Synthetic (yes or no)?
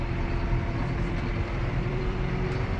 yes